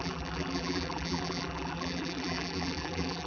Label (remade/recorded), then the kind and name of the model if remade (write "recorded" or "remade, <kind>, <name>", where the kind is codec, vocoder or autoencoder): remade, vocoder, BigVGAN v2